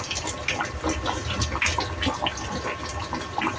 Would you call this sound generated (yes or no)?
no